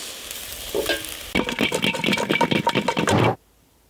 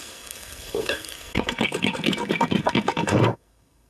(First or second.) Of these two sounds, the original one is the first